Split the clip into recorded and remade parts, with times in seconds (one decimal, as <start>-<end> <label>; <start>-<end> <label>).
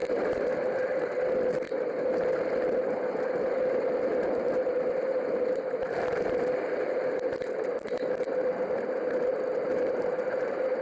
0.0-10.8 recorded